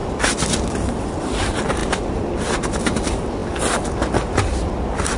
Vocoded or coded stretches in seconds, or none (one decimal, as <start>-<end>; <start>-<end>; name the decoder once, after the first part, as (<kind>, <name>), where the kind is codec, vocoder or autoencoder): none